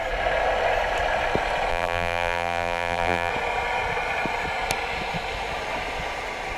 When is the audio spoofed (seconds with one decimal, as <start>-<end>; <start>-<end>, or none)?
1.7-3.3

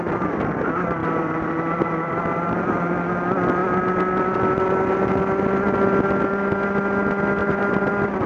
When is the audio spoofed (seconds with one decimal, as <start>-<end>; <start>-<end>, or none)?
1.0-2.9; 7.4-7.9

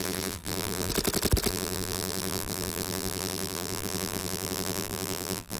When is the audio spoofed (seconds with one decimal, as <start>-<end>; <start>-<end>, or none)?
0.0-0.9; 1.5-5.6

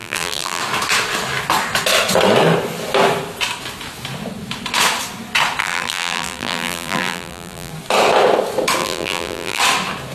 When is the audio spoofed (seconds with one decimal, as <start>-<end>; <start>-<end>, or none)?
0.0-0.6; 5.6-7.7; 8.8-9.6

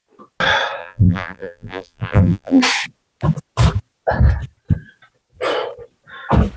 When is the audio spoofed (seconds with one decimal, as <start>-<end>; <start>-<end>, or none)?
0.8-2.6

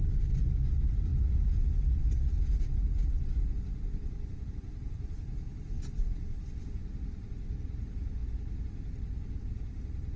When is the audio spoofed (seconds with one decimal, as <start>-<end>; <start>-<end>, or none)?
0.0-1.1; 4.5-8.2; 9.4-10.2